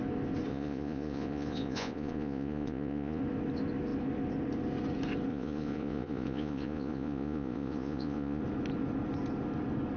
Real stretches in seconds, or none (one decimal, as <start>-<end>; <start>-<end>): 0.0-0.5; 3.2-5.3; 8.4-10.0